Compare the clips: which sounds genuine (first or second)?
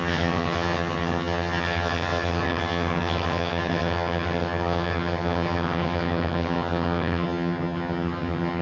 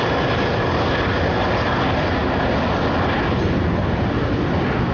second